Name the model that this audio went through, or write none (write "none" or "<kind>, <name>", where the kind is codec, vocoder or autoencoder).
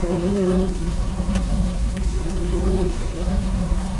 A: codec, SNAC